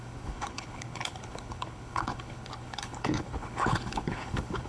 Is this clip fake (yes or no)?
yes